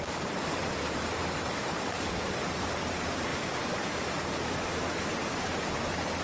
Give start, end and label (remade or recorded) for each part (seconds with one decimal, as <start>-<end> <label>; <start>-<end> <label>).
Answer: 0.0-1.2 remade; 1.2-1.8 recorded; 1.8-6.2 remade